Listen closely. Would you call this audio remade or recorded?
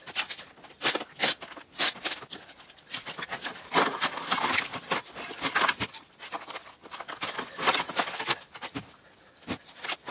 recorded